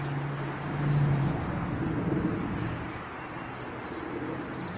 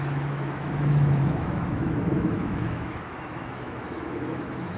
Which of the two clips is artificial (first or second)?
second